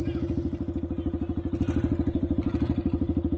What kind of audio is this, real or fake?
real